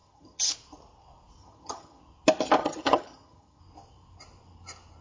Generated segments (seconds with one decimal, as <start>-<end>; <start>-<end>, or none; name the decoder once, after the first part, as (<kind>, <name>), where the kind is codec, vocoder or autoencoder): 0.0-0.5 (vocoder, HiFi-GAN); 1.4-2.0; 2.6-3.6